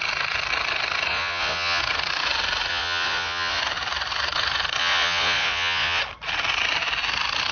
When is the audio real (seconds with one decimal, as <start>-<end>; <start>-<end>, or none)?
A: 0.0-1.1; 1.8-2.7; 3.6-4.8; 6.0-7.5